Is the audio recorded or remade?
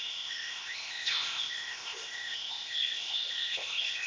remade